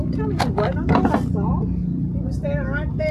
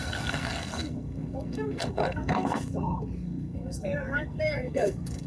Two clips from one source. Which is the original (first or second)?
first